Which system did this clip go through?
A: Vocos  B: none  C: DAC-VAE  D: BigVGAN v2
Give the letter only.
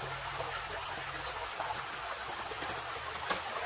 B